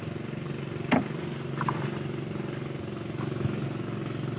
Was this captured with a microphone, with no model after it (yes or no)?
yes